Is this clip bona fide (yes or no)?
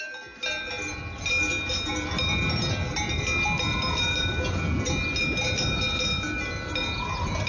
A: yes